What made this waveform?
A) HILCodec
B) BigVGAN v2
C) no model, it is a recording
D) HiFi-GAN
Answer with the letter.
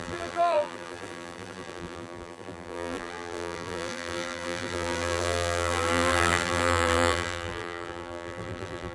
B